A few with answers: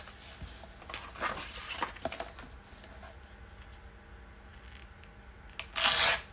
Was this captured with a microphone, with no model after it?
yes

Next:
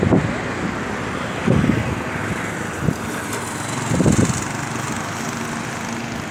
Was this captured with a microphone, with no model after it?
yes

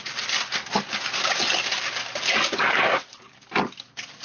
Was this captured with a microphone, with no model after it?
yes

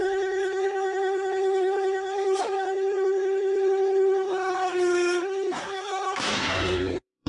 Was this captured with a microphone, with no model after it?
no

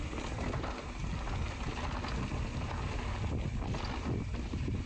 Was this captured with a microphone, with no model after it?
yes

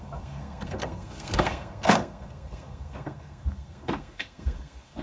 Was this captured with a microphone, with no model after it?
no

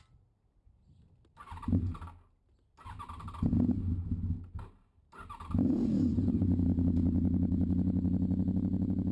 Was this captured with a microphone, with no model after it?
yes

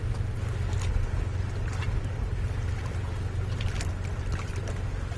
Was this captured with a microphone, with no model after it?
yes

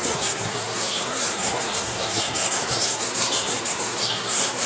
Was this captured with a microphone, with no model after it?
no